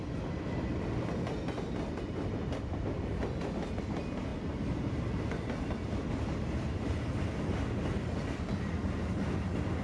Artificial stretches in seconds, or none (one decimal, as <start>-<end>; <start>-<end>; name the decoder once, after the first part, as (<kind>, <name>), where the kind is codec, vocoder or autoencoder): none